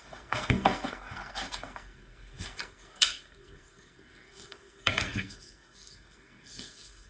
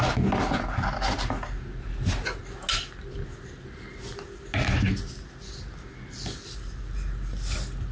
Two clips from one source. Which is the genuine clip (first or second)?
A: second